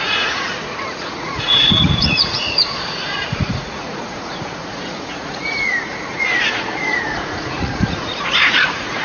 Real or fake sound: fake